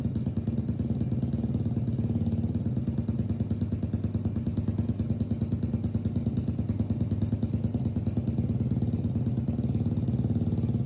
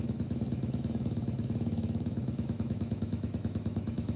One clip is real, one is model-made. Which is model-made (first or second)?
second